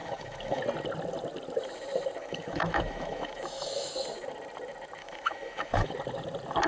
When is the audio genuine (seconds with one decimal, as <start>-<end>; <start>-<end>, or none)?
0.6-2.2; 3.9-5.0; 5.9-6.7

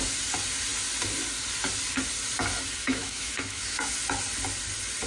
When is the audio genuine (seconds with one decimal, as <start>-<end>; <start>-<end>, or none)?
0.0-2.8; 3.9-5.1

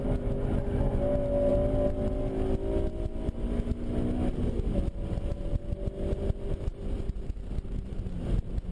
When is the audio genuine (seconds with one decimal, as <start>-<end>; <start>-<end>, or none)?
0.0-8.7

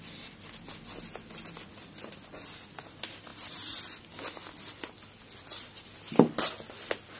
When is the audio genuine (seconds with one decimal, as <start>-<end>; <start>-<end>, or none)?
0.0-7.2

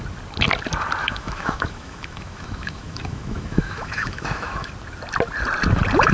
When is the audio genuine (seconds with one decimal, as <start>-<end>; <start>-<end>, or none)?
0.0-1.0; 4.7-6.1

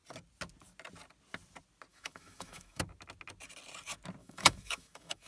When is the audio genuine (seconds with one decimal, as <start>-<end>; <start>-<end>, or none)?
0.0-1.9; 2.8-4.2